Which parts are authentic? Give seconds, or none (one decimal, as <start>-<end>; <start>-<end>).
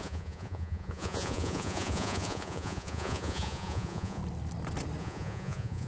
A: 4.2-5.0